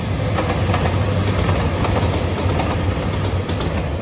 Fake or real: real